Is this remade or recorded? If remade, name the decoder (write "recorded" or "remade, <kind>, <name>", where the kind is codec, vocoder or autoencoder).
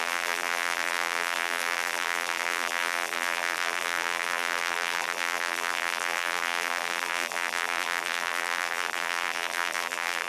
remade, vocoder, BigVGAN v2